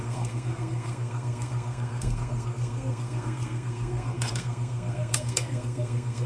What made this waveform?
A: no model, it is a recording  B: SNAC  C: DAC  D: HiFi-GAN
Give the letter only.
B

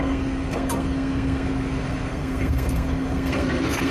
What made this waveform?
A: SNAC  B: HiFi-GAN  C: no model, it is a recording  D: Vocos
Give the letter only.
A